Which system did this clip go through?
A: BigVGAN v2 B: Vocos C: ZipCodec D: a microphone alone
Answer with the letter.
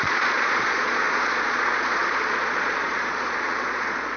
B